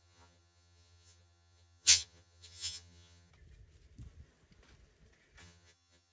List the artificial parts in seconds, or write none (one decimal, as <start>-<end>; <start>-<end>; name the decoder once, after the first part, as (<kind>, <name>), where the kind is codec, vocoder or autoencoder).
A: 0.0-3.3 (vocoder, HiFi-GAN); 5.4-6.1